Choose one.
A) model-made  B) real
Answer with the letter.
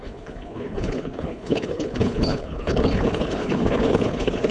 A